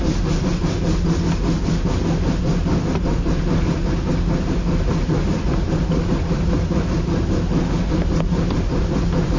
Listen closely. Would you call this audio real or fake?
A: real